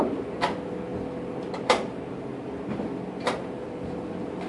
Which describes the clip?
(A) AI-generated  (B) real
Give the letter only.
B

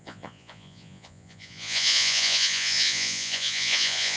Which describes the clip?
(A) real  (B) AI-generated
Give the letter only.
B